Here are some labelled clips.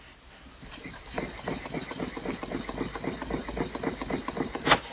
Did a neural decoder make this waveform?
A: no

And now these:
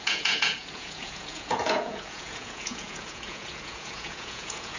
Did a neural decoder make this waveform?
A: yes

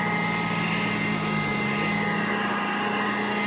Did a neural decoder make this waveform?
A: no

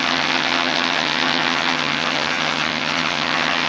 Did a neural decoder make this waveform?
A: yes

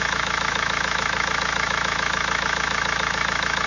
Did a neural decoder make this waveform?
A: yes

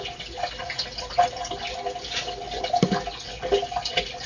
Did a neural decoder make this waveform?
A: no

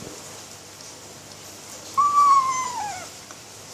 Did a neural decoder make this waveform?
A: no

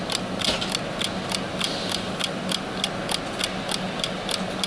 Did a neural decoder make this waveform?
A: no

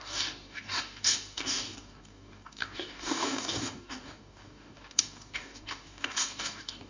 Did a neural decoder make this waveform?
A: yes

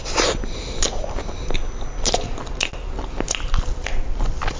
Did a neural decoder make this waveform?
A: no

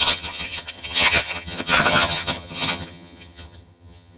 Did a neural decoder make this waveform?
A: yes